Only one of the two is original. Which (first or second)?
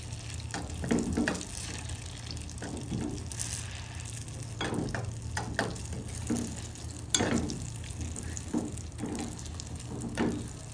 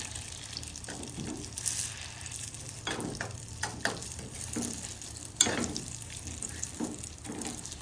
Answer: first